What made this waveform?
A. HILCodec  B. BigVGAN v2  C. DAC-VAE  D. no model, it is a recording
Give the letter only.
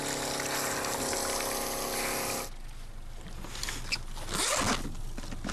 D